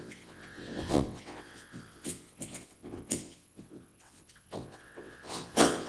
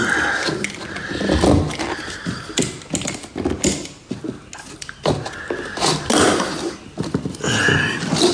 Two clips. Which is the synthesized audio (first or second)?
first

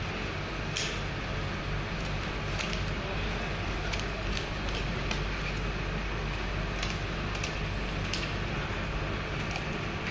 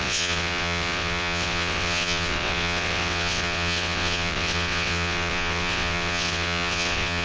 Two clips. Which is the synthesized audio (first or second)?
second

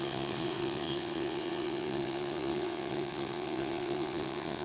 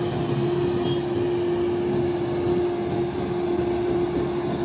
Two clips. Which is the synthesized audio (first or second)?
first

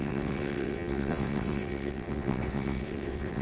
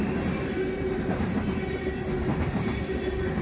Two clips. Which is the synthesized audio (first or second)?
first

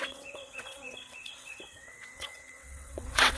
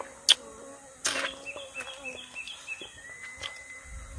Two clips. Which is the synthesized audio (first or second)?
first